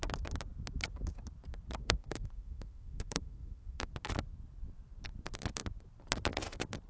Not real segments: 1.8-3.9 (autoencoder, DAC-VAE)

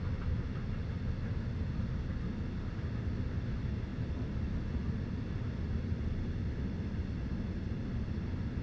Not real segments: none

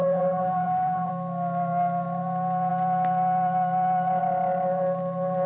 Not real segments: 0.0-1.1 (autoencoder, DAC-VAE)

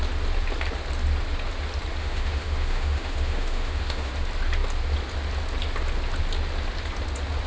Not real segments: 2.0-4.1 (autoencoder, DAC-VAE)

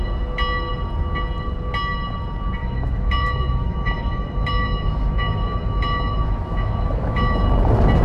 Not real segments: 2.6-7.4 (autoencoder, DAC-VAE)

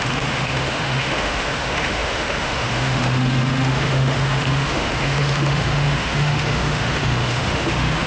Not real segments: 0.0-8.1 (autoencoder, DAC-VAE)

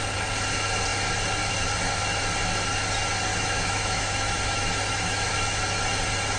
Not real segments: 3.3-5.6 (autoencoder, DAC-VAE)

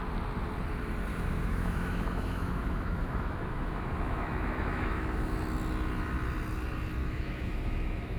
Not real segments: 1.1-5.4 (autoencoder, DAC-VAE); 7.0-8.2